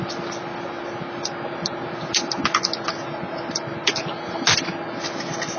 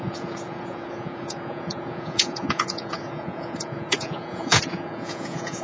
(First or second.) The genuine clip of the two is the first